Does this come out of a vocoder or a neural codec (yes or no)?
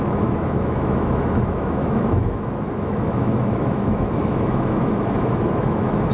yes